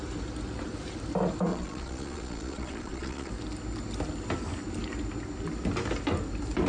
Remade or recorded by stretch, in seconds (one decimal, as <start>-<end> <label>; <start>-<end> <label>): 0.0-1.5 recorded; 1.5-3.3 remade; 3.3-6.7 recorded

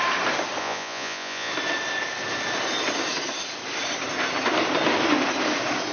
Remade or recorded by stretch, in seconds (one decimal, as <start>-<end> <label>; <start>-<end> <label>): 0.0-0.6 recorded; 0.6-1.5 remade; 1.5-5.9 recorded

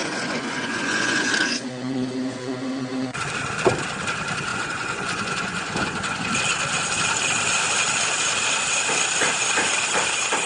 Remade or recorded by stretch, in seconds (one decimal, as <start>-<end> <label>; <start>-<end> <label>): 0.0-3.2 remade; 3.2-4.5 recorded; 4.5-6.3 remade; 6.3-10.5 recorded

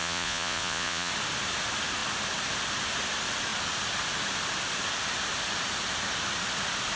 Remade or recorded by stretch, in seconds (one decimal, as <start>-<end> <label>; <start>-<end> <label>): 0.0-1.1 remade; 1.1-7.0 recorded

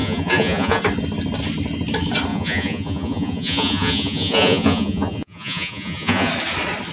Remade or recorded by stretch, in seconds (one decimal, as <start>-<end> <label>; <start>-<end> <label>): 0.0-0.8 remade; 0.8-2.3 recorded; 2.3-6.3 remade; 6.3-6.9 recorded